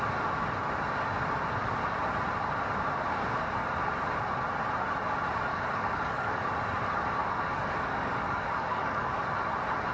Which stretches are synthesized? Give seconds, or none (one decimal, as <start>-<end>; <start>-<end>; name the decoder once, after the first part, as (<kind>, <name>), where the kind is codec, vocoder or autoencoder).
5.5-6.4 (codec, DAC); 7.2-9.2